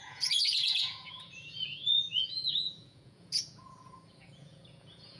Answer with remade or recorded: remade